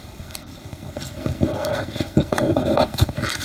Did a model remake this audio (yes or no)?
yes